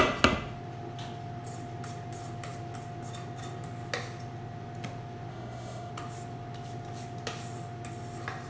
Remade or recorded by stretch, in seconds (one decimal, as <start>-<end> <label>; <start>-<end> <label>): 0.0-5.3 recorded; 5.3-5.9 remade; 5.9-8.5 recorded